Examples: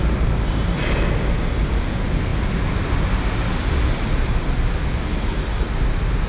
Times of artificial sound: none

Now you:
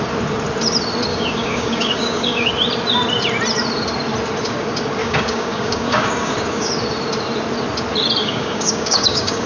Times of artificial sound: 1.1-2.5 (codec, DAC); 5.0-6.7; 8.2-9.5

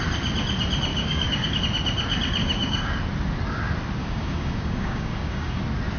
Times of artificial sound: 0.9-1.6 (codec, DAC); 2.4-2.9; 4.0-5.6

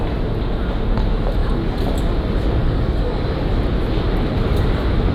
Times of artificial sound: 2.6-3.2 (codec, DAC)

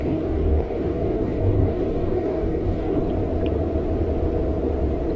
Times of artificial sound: 0.0-3.0 (codec, DAC)

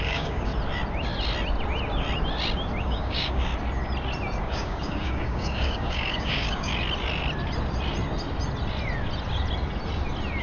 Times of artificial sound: 0.0-0.5 (codec, DAC); 2.8-3.5; 4.4-6.7

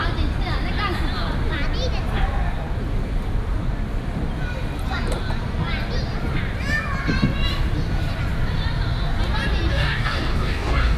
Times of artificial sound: 9.7-11.0 (codec, DAC)

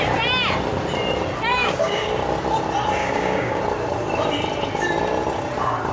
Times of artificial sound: 1.5-2.1 (codec, DAC); 3.0-3.6